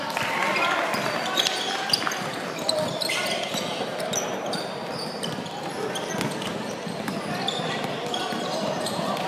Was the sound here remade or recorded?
recorded